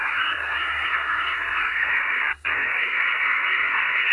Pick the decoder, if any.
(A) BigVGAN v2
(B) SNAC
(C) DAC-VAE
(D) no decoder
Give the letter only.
B